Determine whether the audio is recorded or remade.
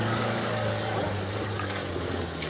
remade